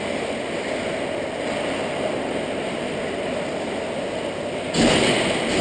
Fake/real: real